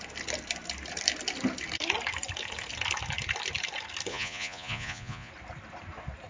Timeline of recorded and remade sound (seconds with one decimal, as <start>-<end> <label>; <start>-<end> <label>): 0.0-4.1 recorded; 4.1-5.3 remade; 5.3-6.3 recorded